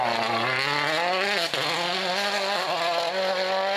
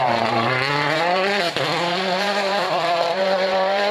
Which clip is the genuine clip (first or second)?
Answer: first